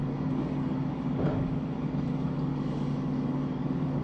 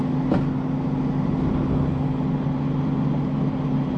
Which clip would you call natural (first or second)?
second